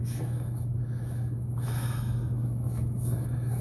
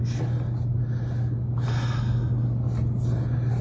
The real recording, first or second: second